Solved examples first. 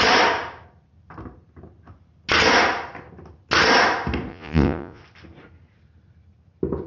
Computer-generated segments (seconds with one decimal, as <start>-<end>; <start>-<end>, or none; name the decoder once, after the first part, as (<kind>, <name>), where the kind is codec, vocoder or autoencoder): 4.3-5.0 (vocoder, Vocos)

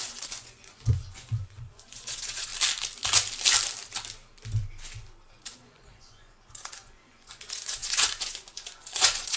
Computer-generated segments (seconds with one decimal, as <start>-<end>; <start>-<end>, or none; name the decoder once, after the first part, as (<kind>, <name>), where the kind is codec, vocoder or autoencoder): 0.0-2.5 (vocoder, Vocos); 5.3-9.4

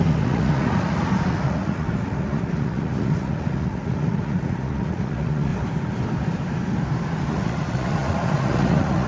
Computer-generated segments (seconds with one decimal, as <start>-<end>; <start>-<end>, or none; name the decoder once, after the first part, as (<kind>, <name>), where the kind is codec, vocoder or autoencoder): 0.0-5.5 (vocoder, Vocos); 7.3-9.1

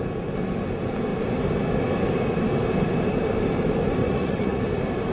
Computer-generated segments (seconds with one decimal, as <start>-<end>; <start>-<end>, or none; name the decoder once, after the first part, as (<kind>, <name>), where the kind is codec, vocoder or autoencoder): 4.0-4.6 (vocoder, Vocos)

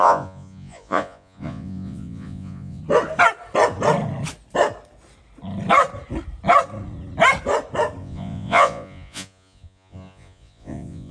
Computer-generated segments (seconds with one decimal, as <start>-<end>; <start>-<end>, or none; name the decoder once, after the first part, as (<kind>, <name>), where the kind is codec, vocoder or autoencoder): 0.0-2.8 (vocoder, Vocos); 8.0-11.1

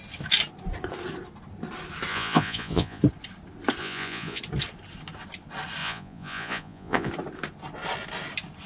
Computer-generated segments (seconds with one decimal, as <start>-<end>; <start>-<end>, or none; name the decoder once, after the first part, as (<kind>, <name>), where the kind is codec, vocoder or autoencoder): 2.1-3.0 (vocoder, Vocos); 3.8-4.4; 5.8-7.1